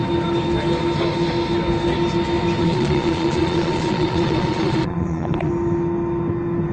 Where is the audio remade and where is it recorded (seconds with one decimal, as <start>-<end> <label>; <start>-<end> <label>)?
0.0-2.6 recorded; 2.6-5.5 remade; 5.5-6.7 recorded